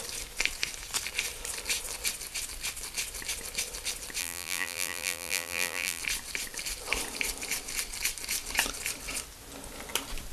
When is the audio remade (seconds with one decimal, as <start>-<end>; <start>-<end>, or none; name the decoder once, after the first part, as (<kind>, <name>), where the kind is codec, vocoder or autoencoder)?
4.2-6.0 (vocoder, BigVGAN v2)